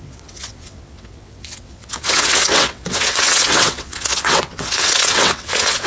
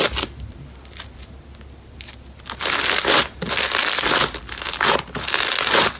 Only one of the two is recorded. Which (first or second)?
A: second